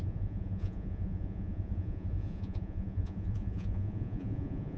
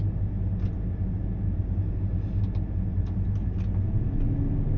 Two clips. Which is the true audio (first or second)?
second